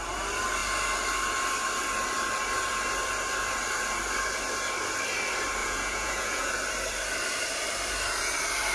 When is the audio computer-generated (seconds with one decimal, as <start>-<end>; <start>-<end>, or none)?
5.6-6.5

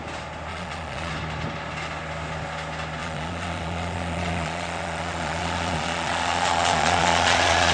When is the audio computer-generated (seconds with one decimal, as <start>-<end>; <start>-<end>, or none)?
0.5-1.1; 3.0-7.7

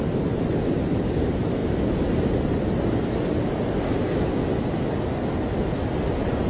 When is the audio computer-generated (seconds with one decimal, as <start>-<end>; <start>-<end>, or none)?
none

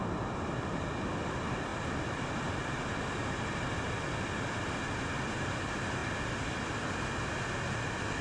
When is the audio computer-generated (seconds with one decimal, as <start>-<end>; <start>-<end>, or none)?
none

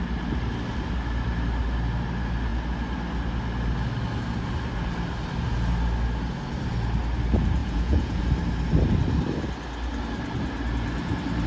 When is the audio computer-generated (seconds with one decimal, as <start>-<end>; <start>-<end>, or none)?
7.6-8.2

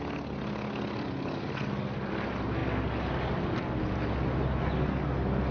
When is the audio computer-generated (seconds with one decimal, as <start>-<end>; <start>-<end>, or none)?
none

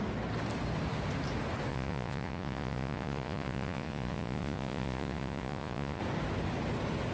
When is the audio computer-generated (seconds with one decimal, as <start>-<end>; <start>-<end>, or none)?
1.7-6.0